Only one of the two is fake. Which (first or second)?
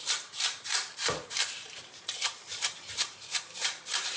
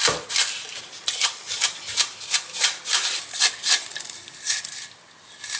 first